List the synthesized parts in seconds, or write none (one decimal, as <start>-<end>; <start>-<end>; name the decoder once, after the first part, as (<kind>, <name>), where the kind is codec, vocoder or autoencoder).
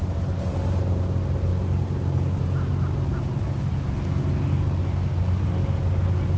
none